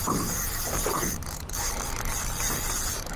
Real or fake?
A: fake